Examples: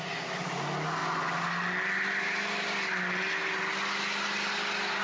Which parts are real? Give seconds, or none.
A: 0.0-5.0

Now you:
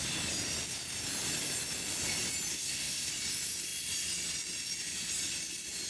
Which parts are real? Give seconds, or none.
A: 0.0-2.5; 3.1-5.9

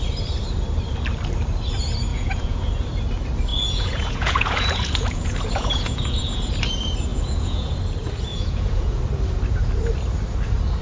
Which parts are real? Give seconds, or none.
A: 0.0-2.1; 2.6-3.5; 6.5-7.1; 7.7-8.3; 9.0-10.8

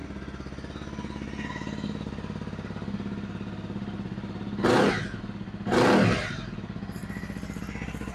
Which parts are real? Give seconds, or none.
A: 0.0-8.1

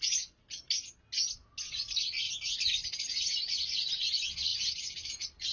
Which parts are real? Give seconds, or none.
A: 0.0-5.5